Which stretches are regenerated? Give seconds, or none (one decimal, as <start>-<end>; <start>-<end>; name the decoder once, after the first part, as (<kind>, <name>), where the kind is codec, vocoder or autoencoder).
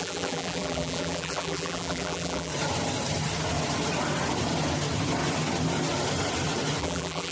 0.0-2.5 (vocoder, BigVGAN v2); 6.8-7.3